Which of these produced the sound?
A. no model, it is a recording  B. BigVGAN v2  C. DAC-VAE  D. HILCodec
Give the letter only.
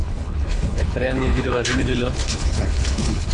D